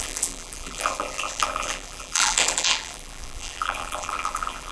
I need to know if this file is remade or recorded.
remade